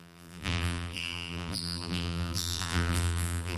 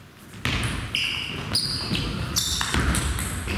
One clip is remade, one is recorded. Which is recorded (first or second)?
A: second